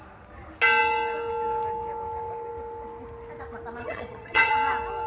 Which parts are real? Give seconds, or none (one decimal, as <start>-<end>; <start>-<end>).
0.0-3.8; 4.5-5.1